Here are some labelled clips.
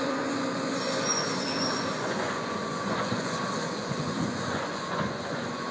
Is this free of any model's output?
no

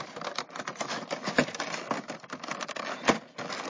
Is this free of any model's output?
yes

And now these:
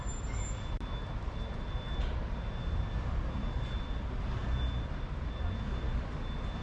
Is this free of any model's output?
yes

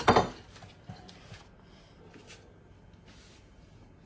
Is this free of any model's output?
yes